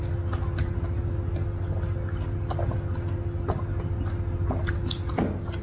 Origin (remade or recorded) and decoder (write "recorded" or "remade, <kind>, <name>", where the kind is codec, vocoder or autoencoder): recorded